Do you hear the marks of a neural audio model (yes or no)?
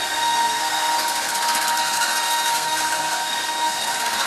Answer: yes